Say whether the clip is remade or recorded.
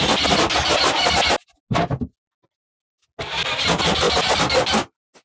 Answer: recorded